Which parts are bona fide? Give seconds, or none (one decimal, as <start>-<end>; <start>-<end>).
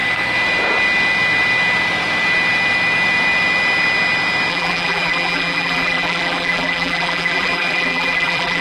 0.0-4.5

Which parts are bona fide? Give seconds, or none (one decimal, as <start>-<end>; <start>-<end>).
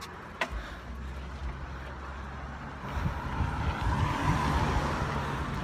0.0-5.6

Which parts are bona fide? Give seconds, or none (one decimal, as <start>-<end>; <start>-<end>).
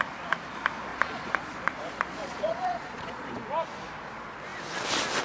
0.0-0.9; 3.3-5.2